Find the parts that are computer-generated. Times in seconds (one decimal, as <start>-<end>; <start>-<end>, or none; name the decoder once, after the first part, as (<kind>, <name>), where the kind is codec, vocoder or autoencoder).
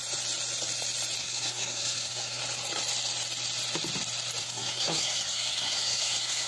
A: 1.2-2.4 (codec, SNAC); 4.4-6.5